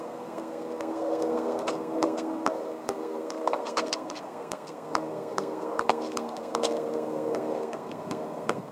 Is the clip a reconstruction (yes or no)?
yes